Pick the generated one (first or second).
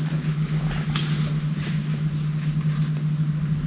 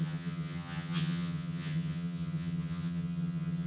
second